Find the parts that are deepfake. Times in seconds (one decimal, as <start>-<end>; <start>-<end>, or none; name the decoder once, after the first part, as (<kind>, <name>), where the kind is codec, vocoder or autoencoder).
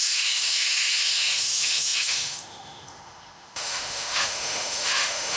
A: 0.0-5.4 (autoencoder, DAC-VAE)